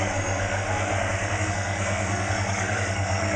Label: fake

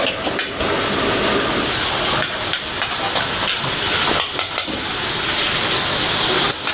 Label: real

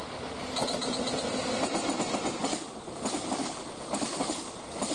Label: real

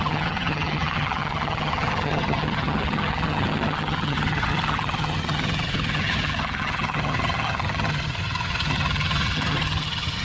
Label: fake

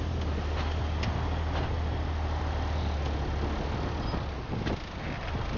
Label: real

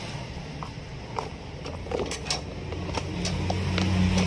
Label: real